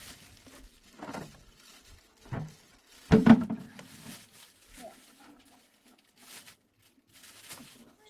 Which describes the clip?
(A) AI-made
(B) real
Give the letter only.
B